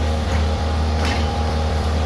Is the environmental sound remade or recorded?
remade